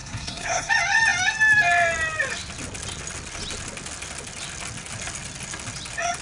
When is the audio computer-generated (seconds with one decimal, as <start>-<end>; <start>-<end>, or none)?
0.0-0.7